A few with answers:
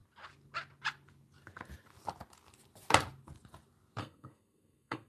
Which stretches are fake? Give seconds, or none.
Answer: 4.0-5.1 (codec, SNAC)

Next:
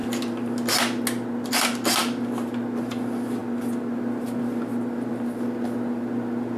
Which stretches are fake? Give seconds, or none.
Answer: none

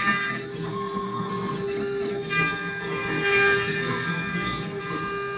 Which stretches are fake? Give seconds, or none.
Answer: 0.7-1.3 (codec, SNAC); 2.1-4.8

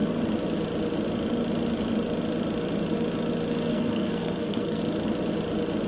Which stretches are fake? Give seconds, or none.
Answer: 3.7-4.8 (codec, SNAC)

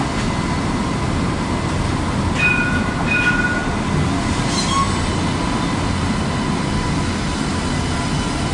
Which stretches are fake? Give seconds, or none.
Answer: none

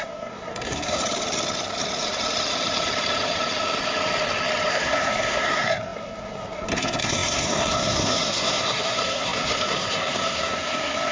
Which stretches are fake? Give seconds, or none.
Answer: 0.0-1.0 (codec, SNAC); 4.7-11.1

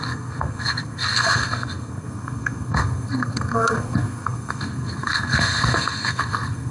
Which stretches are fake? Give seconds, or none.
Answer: 0.0-6.7 (codec, SNAC)

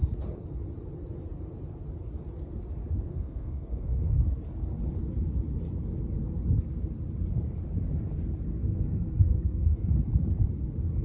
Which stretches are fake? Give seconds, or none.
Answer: 3.1-4.4 (codec, SNAC); 8.7-9.9